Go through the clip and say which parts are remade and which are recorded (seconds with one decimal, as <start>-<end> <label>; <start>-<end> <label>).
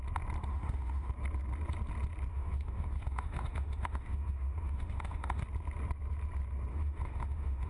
0.0-0.5 recorded; 0.5-1.1 remade; 1.1-2.3 recorded; 2.3-5.4 remade; 5.4-6.7 recorded; 6.7-7.7 remade